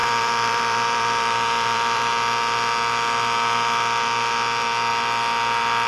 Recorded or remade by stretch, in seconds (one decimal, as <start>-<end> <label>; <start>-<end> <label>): 0.0-2.1 remade; 2.1-5.9 recorded